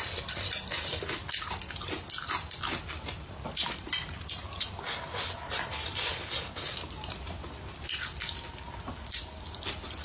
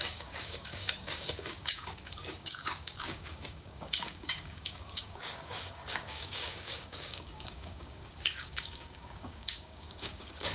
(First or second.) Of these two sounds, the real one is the first